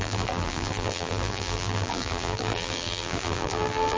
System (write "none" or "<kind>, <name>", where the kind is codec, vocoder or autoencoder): vocoder, BigVGAN v2